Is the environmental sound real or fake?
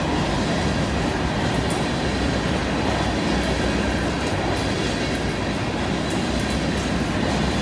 real